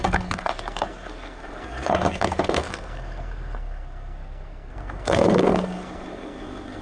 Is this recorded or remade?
remade